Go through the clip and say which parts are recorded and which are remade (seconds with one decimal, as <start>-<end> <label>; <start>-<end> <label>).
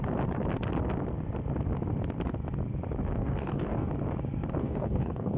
0.0-3.2 recorded; 3.2-3.9 remade; 3.9-4.6 recorded; 4.6-5.4 remade